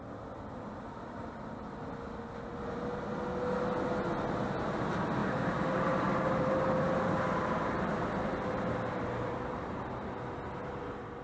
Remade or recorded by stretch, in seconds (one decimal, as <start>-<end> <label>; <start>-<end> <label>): 0.0-5.2 recorded; 5.2-10.1 remade; 10.1-11.2 recorded